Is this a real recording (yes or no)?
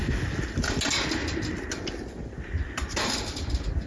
yes